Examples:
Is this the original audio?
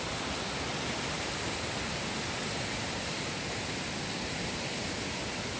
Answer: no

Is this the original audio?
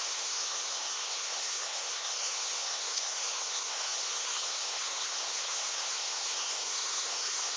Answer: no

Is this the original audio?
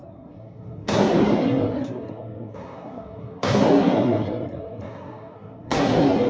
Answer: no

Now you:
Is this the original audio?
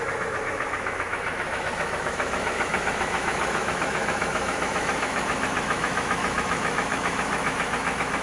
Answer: no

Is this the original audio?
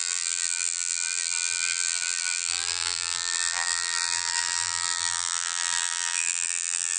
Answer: no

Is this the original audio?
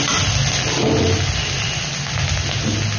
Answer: yes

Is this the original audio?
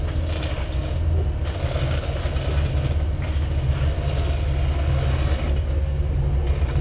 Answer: yes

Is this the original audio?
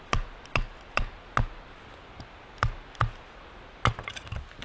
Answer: yes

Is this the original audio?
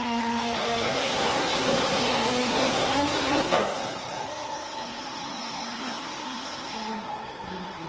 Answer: no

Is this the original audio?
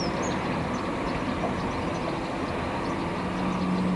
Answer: yes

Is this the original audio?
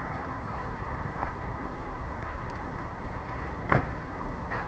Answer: no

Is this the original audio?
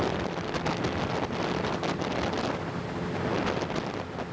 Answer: yes